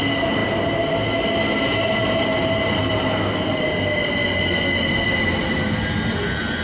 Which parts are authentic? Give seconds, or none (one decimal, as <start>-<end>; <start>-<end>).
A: 0.0-6.6